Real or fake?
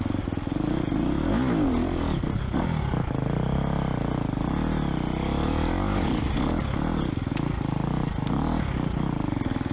real